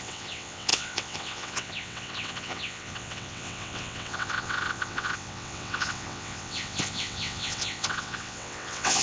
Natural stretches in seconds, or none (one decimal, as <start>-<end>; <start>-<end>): none